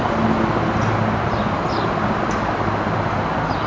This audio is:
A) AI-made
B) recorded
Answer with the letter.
B